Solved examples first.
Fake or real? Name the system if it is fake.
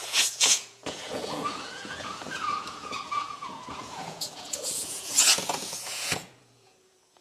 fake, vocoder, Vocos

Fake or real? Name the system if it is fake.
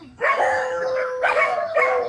fake, codec, DAC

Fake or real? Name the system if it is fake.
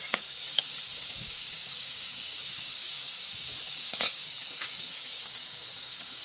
fake, codec, DAC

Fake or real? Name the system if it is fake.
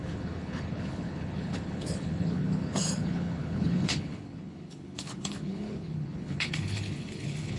fake, codec, HILCodec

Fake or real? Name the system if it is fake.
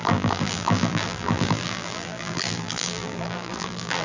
fake, vocoder, BigVGAN v2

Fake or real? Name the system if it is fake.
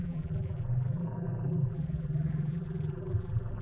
fake, vocoder, BigVGAN v2